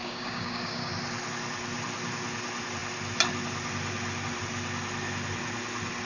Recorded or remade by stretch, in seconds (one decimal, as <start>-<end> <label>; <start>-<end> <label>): 0.0-0.9 remade; 0.9-6.1 recorded